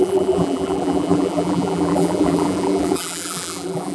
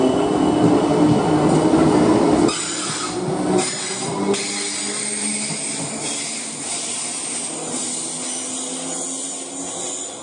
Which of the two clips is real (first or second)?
second